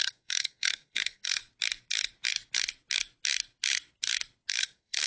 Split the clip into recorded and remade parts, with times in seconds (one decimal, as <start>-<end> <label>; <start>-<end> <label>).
0.0-1.4 remade; 1.4-4.5 recorded; 4.5-5.1 remade